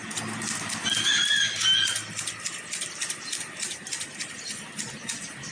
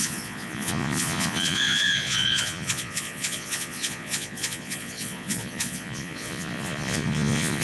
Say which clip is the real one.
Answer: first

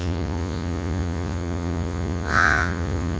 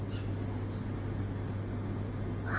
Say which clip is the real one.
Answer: second